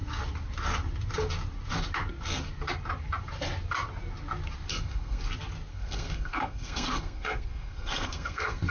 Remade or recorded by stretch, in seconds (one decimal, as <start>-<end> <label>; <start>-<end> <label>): 0.0-4.7 recorded; 4.7-5.2 remade; 5.2-5.7 recorded; 5.7-8.7 remade